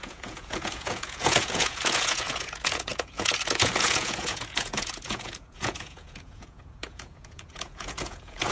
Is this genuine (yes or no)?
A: no